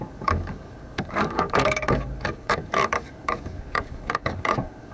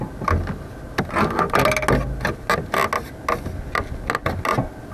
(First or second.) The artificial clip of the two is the first